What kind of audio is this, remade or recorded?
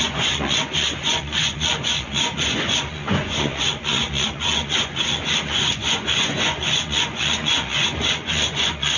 remade